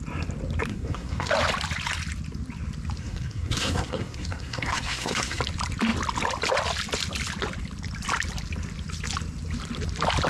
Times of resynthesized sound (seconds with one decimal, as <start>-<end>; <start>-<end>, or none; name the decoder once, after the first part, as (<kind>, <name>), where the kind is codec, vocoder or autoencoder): 0.7-1.3 (codec, SNAC); 3.0-5.4